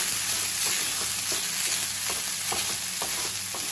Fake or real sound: real